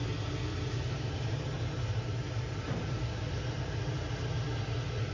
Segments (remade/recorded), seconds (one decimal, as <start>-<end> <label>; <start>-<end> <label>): 0.0-0.5 recorded; 0.5-3.6 remade; 3.6-5.1 recorded